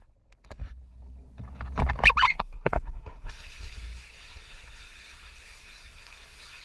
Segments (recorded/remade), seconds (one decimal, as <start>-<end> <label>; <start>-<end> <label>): 0.0-2.3 recorded; 2.3-6.6 remade